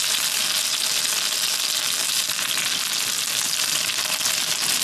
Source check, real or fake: real